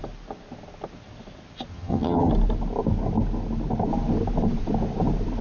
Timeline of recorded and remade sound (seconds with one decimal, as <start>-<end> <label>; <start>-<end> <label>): 0.0-1.7 recorded; 1.7-2.3 remade; 2.3-5.4 recorded